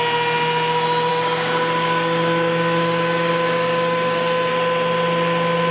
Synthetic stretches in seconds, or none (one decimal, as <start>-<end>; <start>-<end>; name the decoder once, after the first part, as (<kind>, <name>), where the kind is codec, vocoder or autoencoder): 1.1-4.5 (codec, DAC)

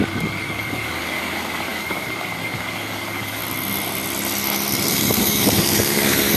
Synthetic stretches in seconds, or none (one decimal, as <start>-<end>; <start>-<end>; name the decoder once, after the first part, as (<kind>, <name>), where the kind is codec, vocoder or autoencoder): 0.0-3.4 (codec, DAC); 4.9-6.4

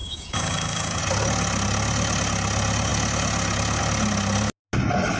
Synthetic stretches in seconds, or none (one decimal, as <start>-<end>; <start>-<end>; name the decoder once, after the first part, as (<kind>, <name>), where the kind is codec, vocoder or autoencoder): 0.0-1.0 (codec, DAC)